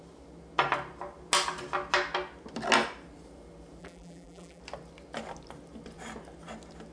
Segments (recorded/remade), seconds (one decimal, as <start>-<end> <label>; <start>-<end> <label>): 0.0-3.8 recorded; 3.8-4.6 remade; 4.6-6.9 recorded

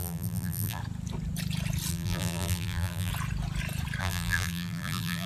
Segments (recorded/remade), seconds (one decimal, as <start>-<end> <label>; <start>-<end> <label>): 0.0-0.8 remade; 0.8-1.9 recorded; 1.9-3.1 remade; 3.1-4.0 recorded; 4.0-5.3 remade

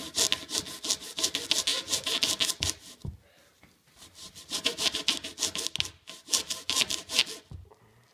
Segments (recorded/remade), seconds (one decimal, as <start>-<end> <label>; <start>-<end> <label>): 0.0-3.5 recorded; 3.5-5.3 remade; 5.3-8.1 recorded

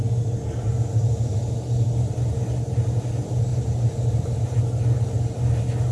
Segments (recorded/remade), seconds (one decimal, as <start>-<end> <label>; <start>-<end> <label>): 0.0-3.5 recorded; 3.5-4.6 remade; 4.6-5.9 recorded

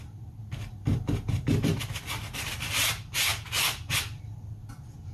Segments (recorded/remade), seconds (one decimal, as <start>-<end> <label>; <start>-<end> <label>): 0.0-0.8 recorded; 0.8-1.8 remade; 1.8-5.1 recorded

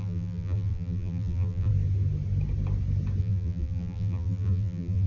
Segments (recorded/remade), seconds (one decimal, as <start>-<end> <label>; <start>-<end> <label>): 0.0-1.7 remade; 1.7-3.2 recorded; 3.2-5.1 remade

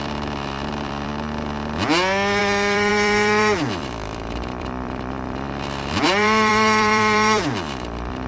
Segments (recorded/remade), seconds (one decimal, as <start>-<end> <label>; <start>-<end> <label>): 0.0-1.1 remade; 1.1-2.4 recorded; 2.4-8.3 remade

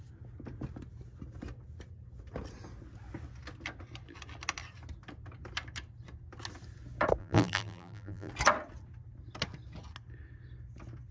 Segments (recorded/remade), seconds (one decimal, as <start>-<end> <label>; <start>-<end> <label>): 0.0-7.2 recorded; 7.2-8.3 remade; 8.3-11.1 recorded